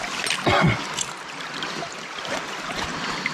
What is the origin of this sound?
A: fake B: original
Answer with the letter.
B